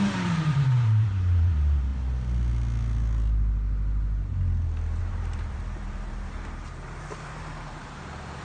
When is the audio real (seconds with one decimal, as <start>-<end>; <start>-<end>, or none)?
1.9-5.0